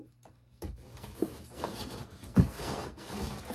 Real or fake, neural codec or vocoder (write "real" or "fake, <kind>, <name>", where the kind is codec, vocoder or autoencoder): fake, codec, SNAC